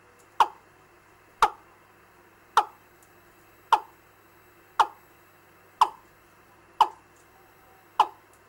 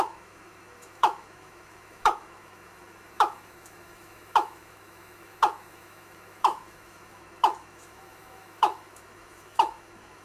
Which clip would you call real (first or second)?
first